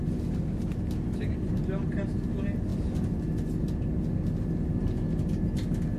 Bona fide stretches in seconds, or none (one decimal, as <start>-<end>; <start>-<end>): 0.0-6.0